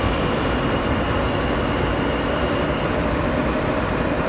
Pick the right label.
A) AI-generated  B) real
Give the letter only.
B